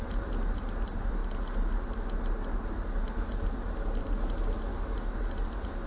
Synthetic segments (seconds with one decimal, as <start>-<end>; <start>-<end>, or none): none